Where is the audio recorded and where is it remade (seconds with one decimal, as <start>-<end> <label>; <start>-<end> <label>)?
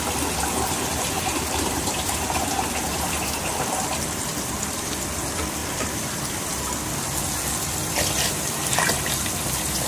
0.0-0.9 recorded; 0.9-3.5 remade; 3.5-5.6 recorded; 5.6-6.7 remade; 6.7-9.9 recorded